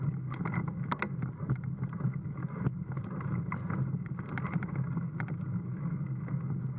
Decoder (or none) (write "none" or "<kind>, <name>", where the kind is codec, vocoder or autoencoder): none